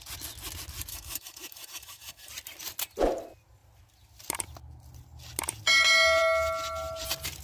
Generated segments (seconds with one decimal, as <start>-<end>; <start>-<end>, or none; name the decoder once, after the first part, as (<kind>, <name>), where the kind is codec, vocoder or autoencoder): 0.9-2.3 (autoencoder, DAC-VAE)